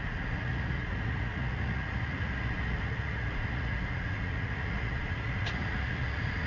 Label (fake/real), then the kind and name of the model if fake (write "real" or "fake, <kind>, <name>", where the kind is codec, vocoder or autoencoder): fake, vocoder, Vocos